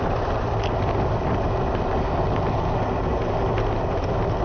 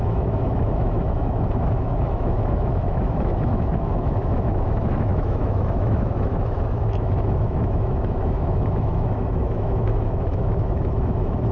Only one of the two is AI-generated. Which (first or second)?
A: second